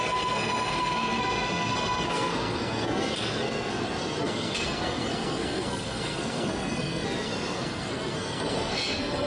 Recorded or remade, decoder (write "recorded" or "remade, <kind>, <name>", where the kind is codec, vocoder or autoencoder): remade, codec, SNAC